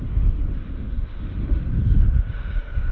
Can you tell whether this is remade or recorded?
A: remade